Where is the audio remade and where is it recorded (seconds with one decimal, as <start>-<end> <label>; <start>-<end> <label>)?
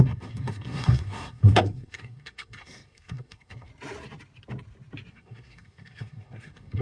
0.0-3.7 remade; 3.7-5.1 recorded; 5.1-6.8 remade